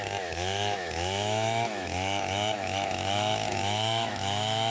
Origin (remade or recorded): remade